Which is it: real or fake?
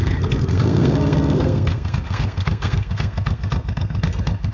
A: fake